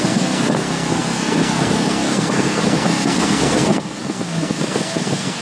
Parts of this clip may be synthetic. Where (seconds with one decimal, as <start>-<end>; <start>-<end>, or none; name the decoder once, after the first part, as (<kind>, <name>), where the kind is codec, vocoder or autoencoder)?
0.0-5.4 (codec, SNAC)